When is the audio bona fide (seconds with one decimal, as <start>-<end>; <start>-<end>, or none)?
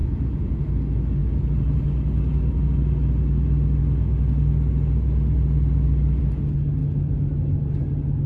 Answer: 0.6-8.3